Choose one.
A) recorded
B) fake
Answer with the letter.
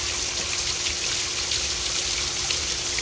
A